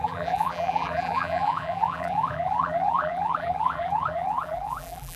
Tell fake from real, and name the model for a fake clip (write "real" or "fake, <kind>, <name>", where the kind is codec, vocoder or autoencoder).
fake, vocoder, BigVGAN v2